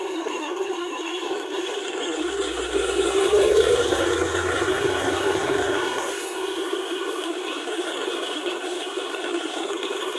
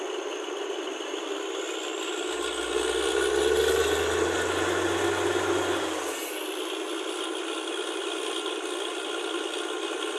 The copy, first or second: first